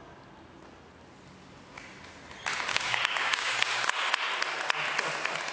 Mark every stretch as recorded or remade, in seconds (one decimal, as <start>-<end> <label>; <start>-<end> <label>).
0.0-2.7 recorded; 2.7-4.1 remade; 4.1-5.5 recorded